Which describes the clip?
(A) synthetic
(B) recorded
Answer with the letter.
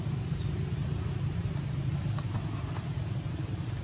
A